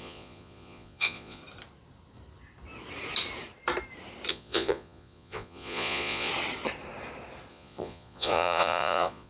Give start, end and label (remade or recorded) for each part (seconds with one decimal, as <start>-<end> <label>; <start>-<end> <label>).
0.0-1.4 remade; 1.4-4.3 recorded; 4.3-6.3 remade; 6.3-7.5 recorded; 7.5-9.3 remade